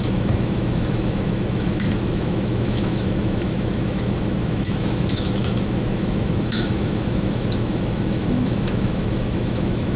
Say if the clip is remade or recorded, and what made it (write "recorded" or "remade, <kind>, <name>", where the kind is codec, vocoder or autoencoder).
remade, autoencoder, DAC-VAE